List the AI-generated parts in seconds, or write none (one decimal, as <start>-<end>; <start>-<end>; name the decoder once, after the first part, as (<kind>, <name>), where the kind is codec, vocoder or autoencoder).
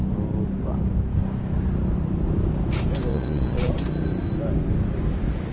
3.1-3.7 (vocoder, Vocos)